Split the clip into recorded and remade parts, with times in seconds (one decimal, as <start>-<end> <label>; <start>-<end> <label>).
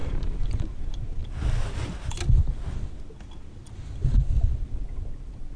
0.0-1.2 remade; 1.2-4.6 recorded; 4.6-5.6 remade